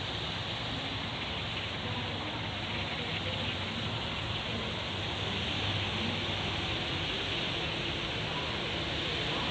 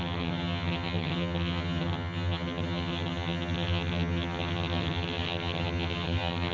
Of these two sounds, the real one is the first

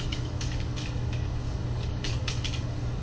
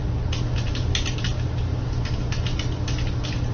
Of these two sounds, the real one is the second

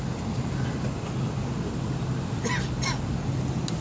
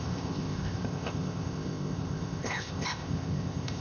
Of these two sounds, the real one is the first